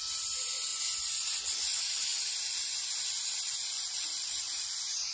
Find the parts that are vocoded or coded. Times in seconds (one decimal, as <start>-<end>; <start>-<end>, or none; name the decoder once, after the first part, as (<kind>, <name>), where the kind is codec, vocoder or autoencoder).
none